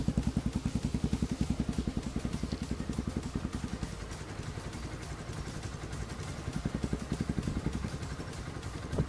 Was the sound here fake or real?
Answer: real